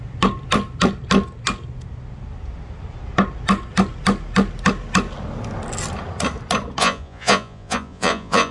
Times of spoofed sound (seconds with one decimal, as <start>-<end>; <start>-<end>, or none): 6.8-8.5